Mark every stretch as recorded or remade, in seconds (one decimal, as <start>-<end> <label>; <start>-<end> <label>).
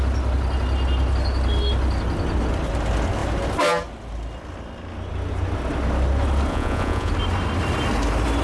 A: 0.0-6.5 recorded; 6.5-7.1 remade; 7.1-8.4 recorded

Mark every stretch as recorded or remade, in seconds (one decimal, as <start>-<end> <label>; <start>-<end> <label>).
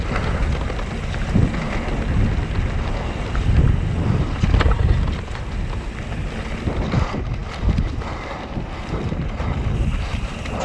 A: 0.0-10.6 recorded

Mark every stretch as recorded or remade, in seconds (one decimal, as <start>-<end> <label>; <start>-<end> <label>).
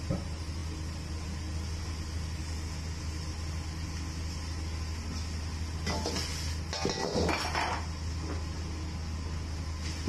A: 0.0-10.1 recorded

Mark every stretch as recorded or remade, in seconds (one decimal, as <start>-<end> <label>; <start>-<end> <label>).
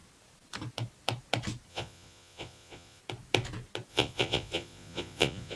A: 0.0-1.7 recorded; 1.7-3.0 remade; 3.0-3.9 recorded; 3.9-5.6 remade